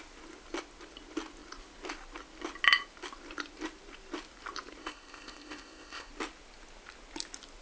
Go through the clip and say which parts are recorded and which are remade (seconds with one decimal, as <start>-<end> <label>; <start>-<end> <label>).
0.0-4.8 recorded; 4.8-6.1 remade; 6.1-7.6 recorded